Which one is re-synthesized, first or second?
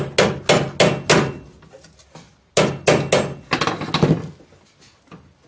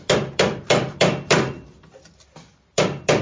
second